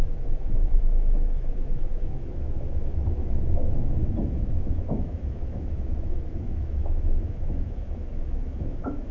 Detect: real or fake fake